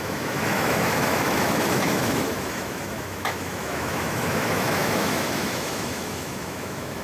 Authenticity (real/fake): fake